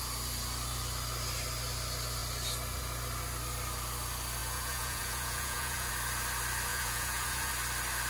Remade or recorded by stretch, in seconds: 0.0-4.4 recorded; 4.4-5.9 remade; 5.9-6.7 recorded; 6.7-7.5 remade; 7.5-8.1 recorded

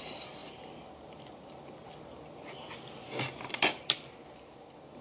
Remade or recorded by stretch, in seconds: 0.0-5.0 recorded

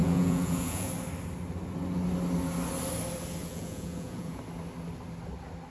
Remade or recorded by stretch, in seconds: 0.0-0.9 remade; 0.9-3.4 recorded; 3.4-4.4 remade; 4.4-5.7 recorded